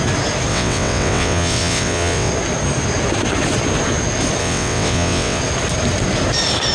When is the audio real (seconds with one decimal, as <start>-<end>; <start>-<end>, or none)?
0.0-0.5; 2.3-4.4; 5.4-6.7